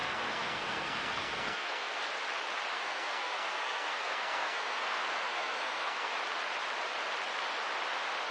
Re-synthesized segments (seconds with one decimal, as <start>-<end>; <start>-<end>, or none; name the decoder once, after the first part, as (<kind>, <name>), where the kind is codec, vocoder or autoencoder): 0.0-2.0 (codec, SNAC); 2.7-6.1